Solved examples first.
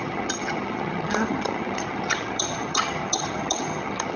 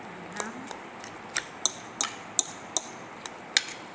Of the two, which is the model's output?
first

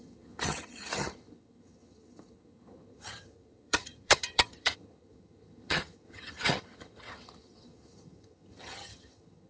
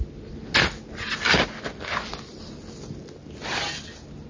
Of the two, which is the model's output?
first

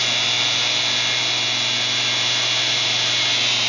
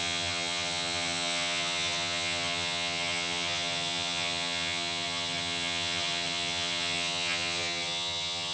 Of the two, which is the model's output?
second